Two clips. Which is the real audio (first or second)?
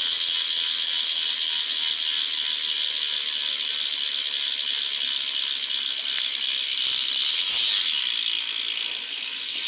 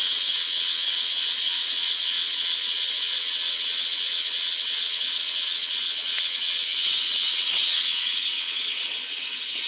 first